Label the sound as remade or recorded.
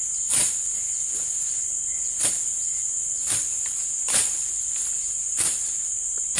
recorded